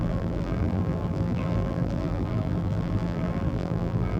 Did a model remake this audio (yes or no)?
yes